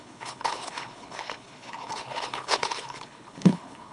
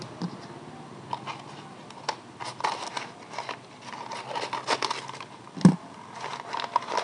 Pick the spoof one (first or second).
first